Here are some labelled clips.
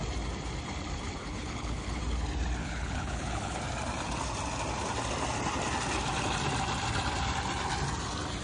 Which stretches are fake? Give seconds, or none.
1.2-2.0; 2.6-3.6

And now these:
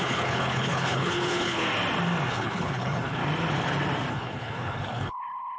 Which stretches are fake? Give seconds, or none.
0.0-1.6; 2.3-3.2; 4.1-5.6

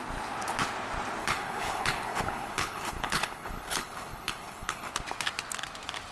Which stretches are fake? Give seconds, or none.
1.2-4.9

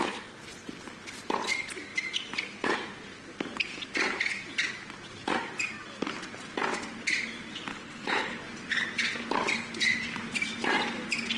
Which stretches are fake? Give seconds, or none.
7.7-8.4